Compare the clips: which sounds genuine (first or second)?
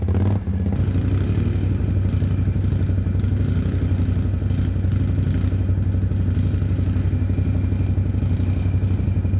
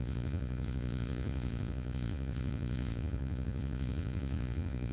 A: first